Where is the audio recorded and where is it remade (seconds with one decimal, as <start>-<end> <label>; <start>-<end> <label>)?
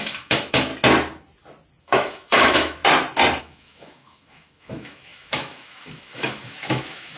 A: 0.0-0.7 remade; 0.7-1.8 recorded; 1.8-2.8 remade; 2.8-3.4 recorded; 3.4-7.2 remade